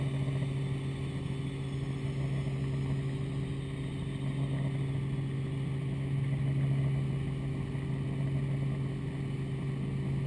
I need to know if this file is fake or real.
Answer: real